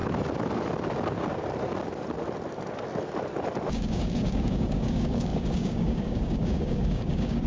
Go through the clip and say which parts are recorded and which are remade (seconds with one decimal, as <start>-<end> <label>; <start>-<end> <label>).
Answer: 0.0-3.7 recorded; 3.7-7.5 remade